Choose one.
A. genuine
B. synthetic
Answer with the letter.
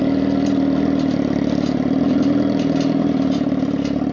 A